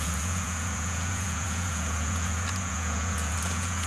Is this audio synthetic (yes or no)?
yes